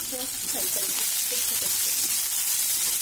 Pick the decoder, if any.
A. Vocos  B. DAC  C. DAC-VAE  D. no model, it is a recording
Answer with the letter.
D